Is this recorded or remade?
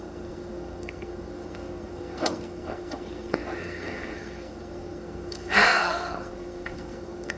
remade